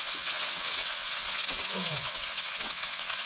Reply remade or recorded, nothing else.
remade